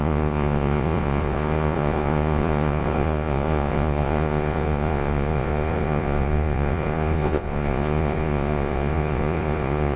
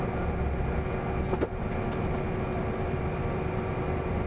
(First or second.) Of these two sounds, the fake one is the first